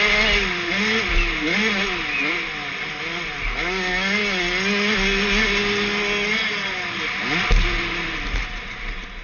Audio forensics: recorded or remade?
recorded